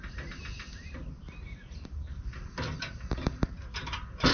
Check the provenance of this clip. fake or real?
real